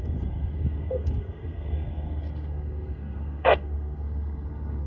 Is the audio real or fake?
fake